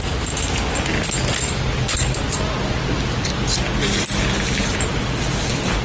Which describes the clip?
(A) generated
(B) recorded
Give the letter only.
B